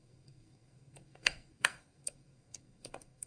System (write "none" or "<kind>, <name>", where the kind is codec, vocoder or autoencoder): codec, SNAC